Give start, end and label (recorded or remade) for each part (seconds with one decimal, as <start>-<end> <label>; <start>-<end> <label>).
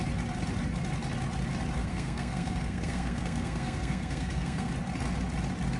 0.0-1.8 recorded; 1.8-4.7 remade; 4.7-5.8 recorded